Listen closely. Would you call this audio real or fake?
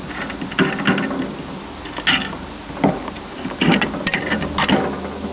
real